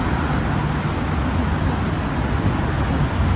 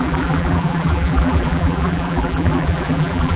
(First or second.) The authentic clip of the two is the first